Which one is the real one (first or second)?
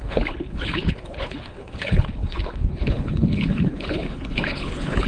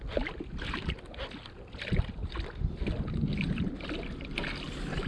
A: second